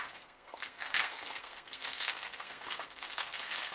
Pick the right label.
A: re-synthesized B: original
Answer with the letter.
A